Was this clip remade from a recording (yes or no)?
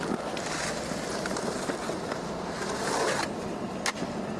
no